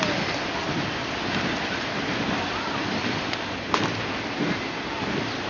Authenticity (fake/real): real